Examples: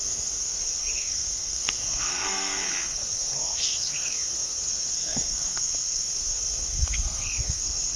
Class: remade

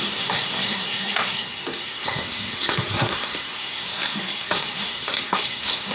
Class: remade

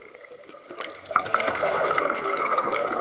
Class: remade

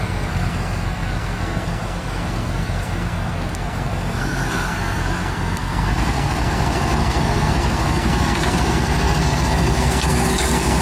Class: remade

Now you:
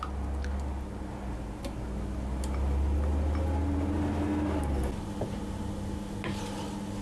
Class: recorded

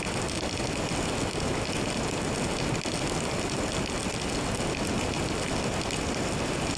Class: recorded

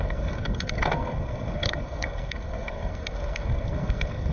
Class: remade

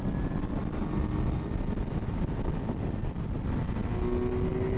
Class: recorded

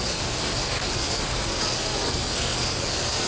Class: remade